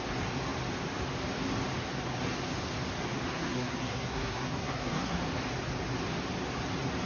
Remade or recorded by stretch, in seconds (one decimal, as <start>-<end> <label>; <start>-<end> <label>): 0.0-3.3 recorded; 3.3-5.2 remade; 5.2-7.1 recorded